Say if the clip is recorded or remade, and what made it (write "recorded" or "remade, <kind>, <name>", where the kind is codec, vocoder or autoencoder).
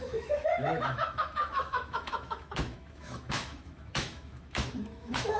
remade, autoencoder, DAC-VAE